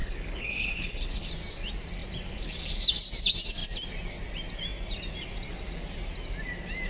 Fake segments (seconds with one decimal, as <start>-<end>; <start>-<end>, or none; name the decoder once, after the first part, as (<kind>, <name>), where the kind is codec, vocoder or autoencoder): 0.0-1.3 (codec, HILCodec)